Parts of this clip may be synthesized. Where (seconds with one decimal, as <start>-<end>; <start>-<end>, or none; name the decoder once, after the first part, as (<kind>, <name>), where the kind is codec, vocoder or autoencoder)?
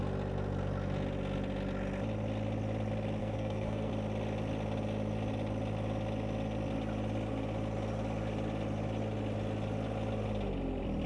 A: 3.2-3.9 (codec, SNAC)